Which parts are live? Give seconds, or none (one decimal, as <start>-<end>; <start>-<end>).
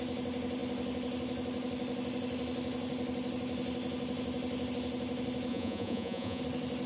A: 0.0-5.5; 6.4-6.9